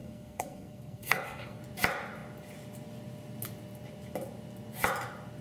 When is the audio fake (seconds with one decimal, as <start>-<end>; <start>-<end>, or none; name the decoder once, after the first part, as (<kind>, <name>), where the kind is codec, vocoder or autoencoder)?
0.0-1.6 (codec, SNAC)